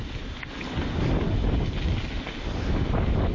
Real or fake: real